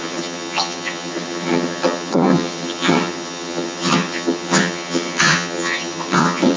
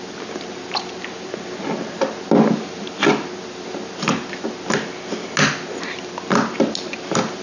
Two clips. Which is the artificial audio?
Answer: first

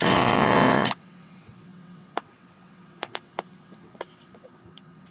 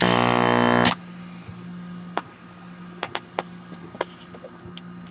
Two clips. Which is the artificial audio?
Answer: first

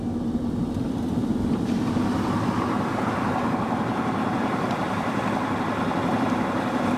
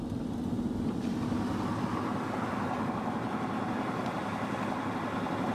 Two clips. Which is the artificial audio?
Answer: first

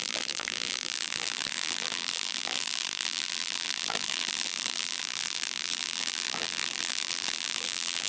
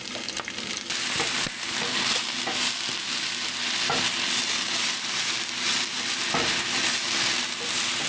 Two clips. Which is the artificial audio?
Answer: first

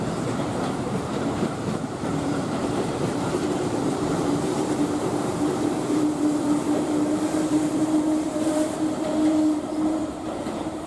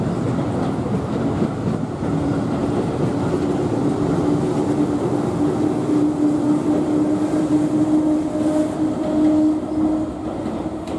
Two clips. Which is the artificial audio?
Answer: first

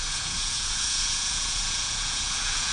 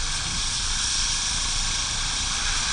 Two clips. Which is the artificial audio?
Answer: first